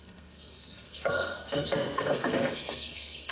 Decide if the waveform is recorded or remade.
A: remade